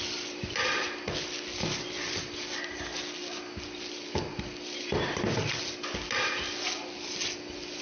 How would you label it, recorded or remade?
recorded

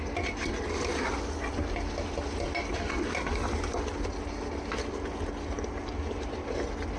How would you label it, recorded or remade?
recorded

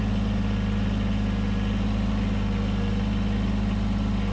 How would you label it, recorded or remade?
recorded